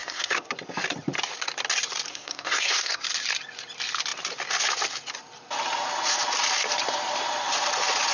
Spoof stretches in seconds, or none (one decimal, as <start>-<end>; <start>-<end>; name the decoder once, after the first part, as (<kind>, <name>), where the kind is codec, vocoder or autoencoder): 0.0-0.5 (codec, SNAC); 2.1-3.0